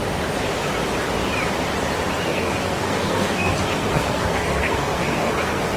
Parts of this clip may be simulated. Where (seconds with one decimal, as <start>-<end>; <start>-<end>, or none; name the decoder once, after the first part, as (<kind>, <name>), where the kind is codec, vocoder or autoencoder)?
2.3-5.8 (codec, SNAC)